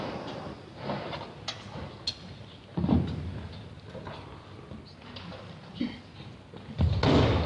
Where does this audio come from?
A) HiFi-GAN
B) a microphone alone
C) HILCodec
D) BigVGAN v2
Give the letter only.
B